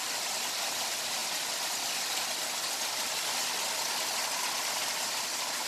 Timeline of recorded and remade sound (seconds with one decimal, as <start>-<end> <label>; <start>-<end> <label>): 0.0-1.2 remade; 1.2-4.6 recorded; 4.6-5.7 remade